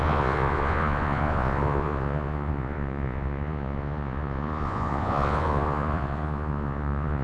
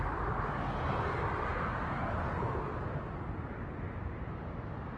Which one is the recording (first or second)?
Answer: second